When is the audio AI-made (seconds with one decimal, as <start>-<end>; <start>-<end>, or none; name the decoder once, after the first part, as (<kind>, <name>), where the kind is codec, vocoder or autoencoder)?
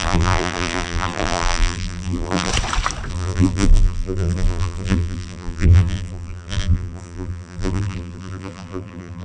0.0-2.5 (vocoder, BigVGAN v2); 3.1-9.2